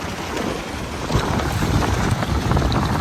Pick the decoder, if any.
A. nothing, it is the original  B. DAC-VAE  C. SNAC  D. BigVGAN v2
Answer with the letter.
A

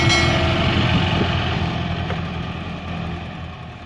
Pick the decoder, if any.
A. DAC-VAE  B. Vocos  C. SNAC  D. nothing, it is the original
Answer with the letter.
D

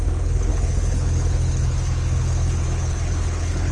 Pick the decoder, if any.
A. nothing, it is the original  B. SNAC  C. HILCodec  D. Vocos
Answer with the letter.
C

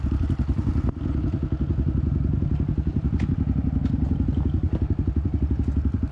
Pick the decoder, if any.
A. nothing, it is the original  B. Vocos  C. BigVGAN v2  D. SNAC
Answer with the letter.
A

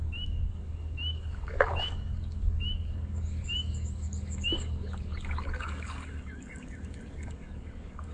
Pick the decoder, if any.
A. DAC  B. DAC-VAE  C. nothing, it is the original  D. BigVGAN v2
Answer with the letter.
A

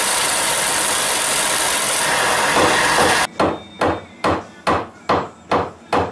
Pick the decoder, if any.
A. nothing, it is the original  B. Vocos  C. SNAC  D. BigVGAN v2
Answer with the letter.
A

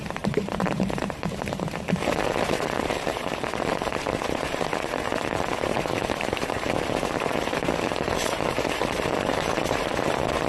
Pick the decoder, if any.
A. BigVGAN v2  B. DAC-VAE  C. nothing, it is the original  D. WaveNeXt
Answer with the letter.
A